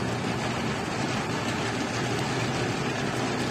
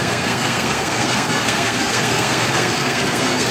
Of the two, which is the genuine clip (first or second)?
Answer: first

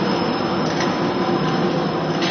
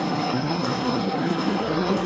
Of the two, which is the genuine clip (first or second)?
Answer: first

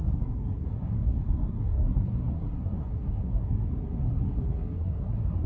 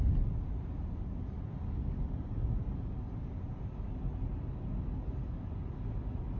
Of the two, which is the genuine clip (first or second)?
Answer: second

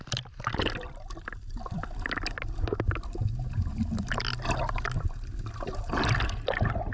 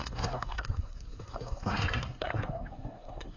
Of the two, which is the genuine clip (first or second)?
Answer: first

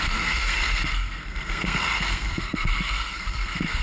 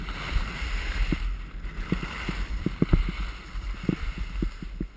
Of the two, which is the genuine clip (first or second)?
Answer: second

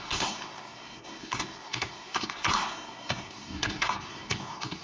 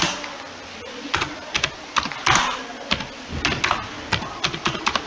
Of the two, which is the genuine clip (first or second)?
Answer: second